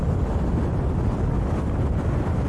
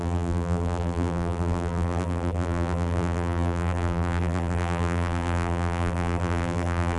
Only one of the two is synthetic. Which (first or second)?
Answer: second